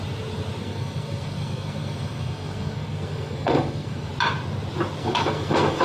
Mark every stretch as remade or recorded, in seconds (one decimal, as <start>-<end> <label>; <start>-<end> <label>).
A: 0.0-0.6 recorded; 0.6-4.1 remade; 4.1-5.0 recorded; 5.0-5.8 remade